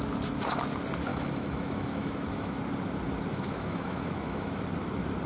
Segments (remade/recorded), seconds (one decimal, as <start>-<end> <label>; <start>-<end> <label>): 0.0-1.1 recorded; 1.1-2.6 remade; 2.6-3.3 recorded; 3.3-4.6 remade; 4.6-5.3 recorded